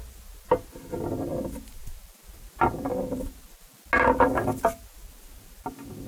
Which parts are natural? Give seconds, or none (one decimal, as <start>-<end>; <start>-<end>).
0.0-6.1